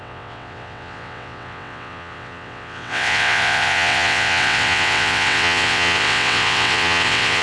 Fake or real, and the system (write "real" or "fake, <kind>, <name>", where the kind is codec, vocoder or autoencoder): fake, vocoder, WaveNeXt